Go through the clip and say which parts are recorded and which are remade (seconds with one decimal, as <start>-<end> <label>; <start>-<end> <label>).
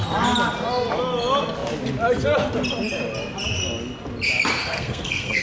0.0-4.6 recorded; 4.6-5.4 remade